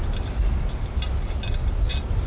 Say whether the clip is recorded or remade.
recorded